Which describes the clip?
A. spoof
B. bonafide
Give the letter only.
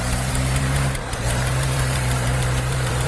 A